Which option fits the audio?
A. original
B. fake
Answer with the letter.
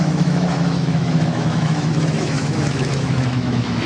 B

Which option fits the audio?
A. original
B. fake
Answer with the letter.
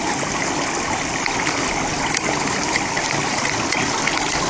A